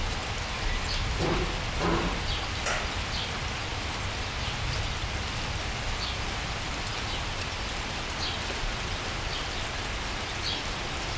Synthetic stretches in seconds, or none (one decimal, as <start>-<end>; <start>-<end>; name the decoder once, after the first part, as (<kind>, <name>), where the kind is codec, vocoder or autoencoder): none